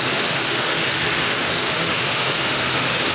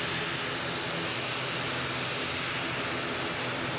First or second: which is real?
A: second